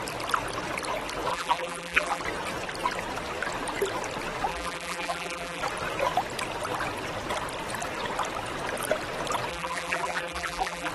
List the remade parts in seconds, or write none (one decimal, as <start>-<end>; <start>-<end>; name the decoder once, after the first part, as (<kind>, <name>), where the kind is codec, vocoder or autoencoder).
1.3-2.2 (vocoder, BigVGAN v2); 4.5-5.6; 9.5-10.9